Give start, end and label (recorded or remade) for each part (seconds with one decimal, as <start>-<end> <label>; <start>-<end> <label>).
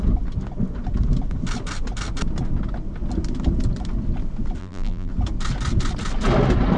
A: 0.0-4.6 recorded; 4.6-5.1 remade; 5.1-6.8 recorded